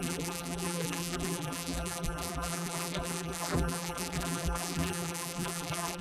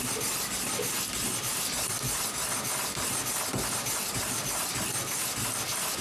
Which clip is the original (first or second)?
second